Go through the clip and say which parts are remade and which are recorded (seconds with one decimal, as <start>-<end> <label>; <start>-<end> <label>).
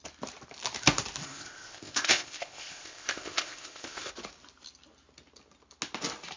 0.0-1.2 recorded; 1.2-4.1 remade; 4.1-6.4 recorded